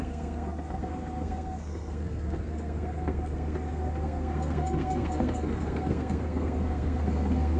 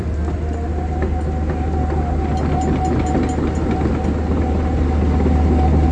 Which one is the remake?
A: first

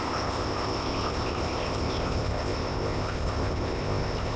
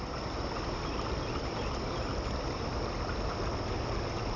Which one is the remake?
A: first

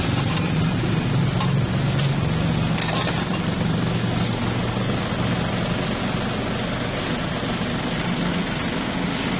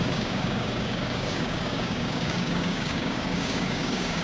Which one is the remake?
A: second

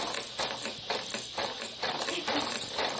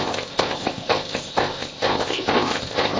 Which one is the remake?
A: second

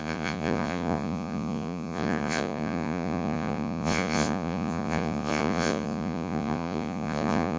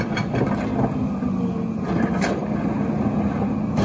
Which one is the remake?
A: first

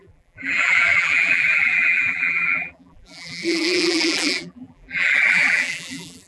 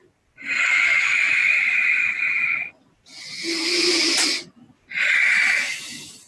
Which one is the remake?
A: first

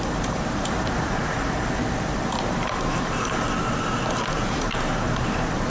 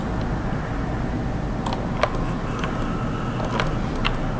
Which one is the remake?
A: first